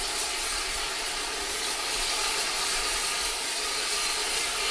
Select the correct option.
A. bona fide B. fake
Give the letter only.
A